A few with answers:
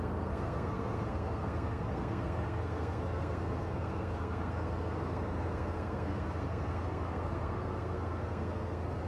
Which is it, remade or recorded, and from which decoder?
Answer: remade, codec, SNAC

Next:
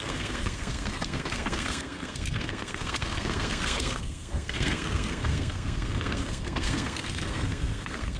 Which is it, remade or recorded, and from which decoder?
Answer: remade, codec, SNAC